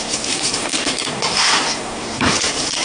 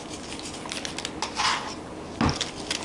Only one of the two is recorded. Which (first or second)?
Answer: second